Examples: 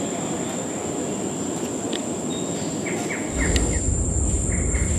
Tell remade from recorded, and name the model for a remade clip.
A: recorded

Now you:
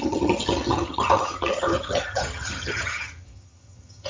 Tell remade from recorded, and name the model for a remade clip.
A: remade, vocoder, HiFi-GAN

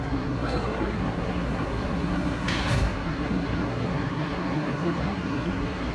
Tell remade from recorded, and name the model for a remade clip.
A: remade, codec, SNAC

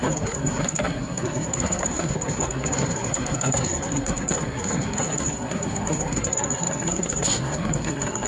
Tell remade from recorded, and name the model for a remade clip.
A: remade, codec, SNAC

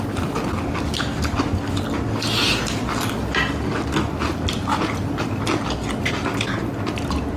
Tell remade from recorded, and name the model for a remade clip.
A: recorded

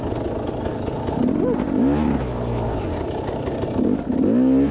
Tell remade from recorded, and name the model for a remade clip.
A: recorded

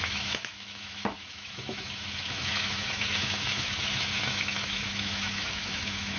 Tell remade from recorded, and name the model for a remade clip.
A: remade, autoencoder, DAC-VAE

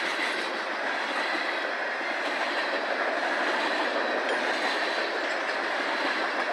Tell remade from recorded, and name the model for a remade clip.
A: recorded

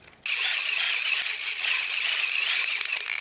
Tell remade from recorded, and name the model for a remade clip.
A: recorded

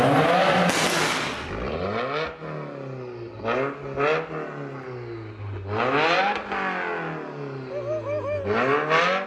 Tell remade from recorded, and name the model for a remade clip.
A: recorded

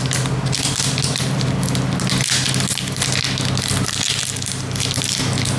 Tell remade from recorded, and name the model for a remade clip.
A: recorded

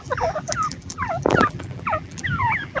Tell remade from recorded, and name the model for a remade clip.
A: remade, vocoder, BigVGAN v2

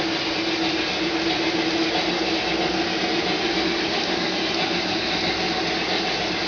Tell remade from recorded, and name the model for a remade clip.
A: recorded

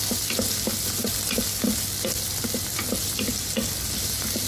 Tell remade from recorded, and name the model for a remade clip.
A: recorded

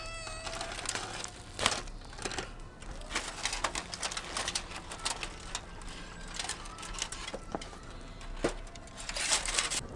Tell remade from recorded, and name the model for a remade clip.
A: recorded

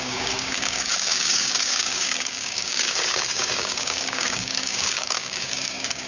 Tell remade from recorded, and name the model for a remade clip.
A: remade, codec, DAC